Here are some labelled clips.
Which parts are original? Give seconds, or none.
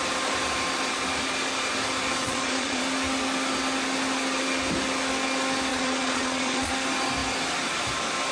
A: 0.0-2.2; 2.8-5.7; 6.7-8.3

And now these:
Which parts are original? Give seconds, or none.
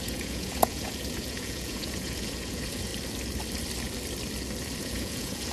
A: 2.9-4.8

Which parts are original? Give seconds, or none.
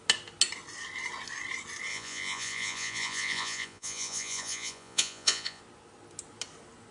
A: 0.0-1.9; 5.6-6.9